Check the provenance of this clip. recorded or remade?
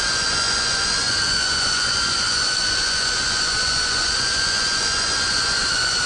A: remade